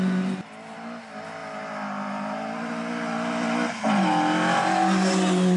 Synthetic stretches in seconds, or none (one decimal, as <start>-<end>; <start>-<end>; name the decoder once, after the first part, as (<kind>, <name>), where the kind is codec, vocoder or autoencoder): none